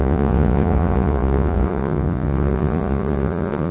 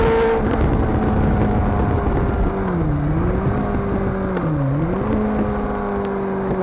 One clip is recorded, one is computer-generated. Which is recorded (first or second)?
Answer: second